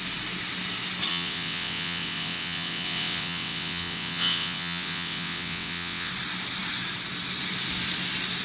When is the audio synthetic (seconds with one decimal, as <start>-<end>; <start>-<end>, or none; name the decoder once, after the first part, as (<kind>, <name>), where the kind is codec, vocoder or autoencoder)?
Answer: 1.1-6.1 (vocoder, WaveNeXt)